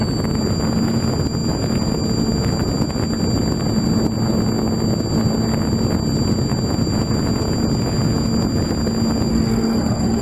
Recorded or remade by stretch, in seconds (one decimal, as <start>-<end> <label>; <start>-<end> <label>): 0.0-9.3 recorded; 9.3-10.2 remade